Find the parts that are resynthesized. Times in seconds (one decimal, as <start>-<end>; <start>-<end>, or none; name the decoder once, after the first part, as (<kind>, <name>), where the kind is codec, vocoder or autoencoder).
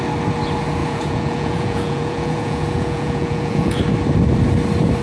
0.8-3.8 (vocoder, Vocos)